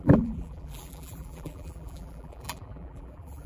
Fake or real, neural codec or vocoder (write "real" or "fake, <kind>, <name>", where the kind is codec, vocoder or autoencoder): fake, vocoder, BigVGAN v2